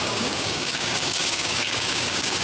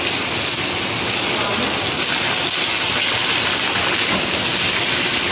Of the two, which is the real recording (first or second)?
second